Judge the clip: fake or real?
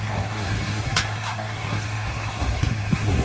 fake